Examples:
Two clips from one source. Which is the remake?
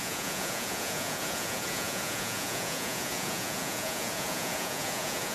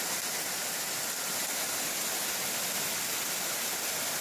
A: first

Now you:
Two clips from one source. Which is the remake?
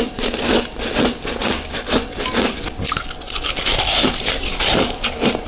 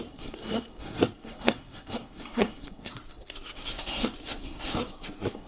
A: second